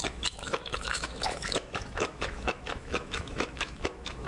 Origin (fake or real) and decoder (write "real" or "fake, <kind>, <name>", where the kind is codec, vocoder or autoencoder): fake, autoencoder, DAC-VAE